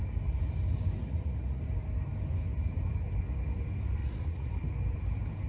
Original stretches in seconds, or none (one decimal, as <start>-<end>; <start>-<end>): 0.0-1.0; 1.6-4.0; 4.5-5.5